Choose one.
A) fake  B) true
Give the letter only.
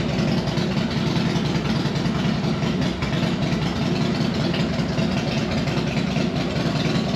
B